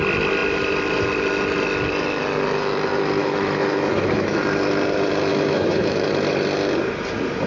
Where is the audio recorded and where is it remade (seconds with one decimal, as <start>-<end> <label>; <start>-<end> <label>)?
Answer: 0.0-3.2 recorded; 3.2-4.4 remade; 4.4-5.3 recorded; 5.3-6.1 remade; 6.1-7.5 recorded